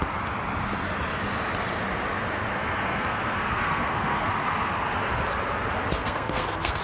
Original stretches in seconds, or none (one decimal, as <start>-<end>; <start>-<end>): 0.0-2.5; 4.3-6.0